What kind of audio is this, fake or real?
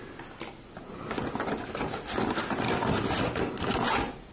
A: real